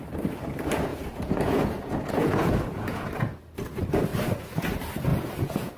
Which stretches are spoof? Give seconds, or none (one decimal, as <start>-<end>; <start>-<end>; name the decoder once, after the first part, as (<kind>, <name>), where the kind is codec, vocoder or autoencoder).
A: 0.9-3.4 (vocoder, Vocos); 5.1-5.8